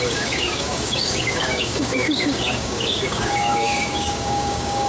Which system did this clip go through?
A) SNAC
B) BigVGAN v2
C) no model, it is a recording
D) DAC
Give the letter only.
D